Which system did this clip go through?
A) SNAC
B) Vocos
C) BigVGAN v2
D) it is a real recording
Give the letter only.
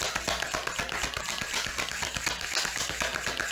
D